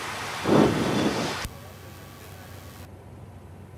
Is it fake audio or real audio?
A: real